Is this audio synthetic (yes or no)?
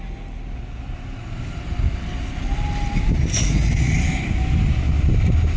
no